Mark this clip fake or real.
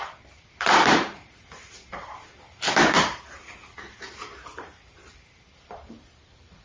fake